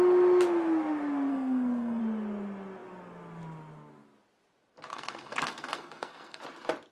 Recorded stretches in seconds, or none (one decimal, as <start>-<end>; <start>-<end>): 0.0-1.3; 2.0-4.9; 6.4-6.9